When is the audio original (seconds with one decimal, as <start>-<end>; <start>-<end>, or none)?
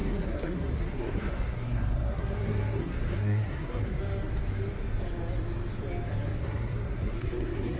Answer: 4.0-6.4